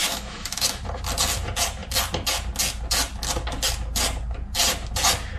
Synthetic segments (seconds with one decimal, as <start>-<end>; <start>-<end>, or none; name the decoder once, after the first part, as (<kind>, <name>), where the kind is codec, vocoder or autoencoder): 0.0-0.8 (autoencoder, DAC-VAE)